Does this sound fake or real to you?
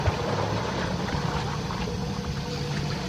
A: real